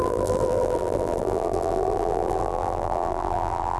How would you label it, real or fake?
fake